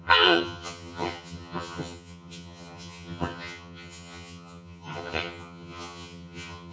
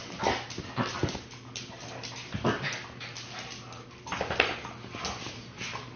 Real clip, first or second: second